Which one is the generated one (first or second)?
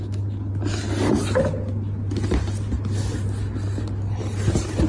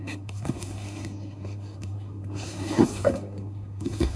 second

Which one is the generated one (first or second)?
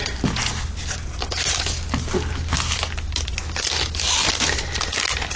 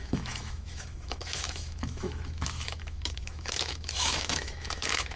second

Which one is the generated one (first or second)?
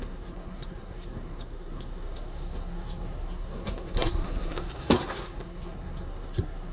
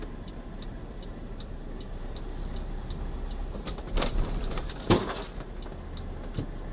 first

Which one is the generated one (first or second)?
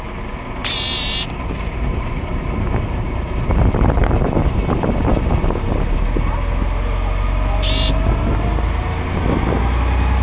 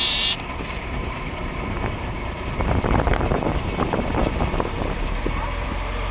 second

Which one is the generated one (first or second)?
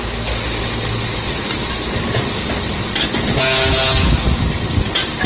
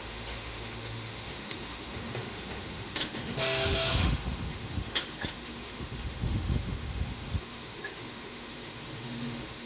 second